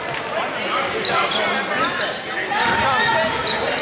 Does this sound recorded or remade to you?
recorded